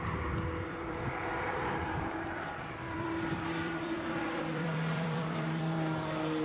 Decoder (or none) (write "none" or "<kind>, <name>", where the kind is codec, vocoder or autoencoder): vocoder, BigVGAN v2